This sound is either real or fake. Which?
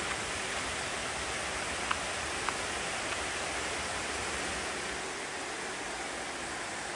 real